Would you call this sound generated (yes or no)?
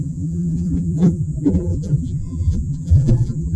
yes